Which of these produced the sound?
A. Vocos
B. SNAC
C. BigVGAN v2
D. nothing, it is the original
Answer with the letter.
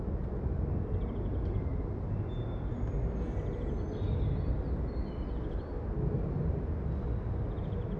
D